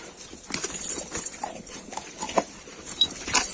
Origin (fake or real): real